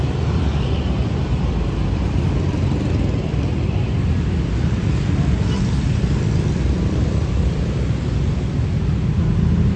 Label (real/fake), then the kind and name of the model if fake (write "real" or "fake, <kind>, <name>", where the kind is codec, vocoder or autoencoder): real